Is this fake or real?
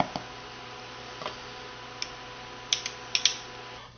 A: real